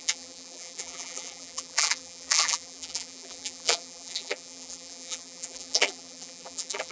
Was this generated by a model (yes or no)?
yes